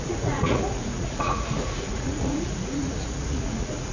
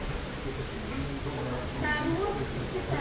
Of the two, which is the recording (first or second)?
second